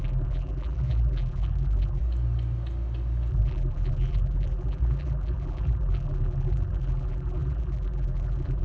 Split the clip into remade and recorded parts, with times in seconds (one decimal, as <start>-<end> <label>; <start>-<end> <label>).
0.0-2.0 remade; 2.0-3.3 recorded; 3.3-8.6 remade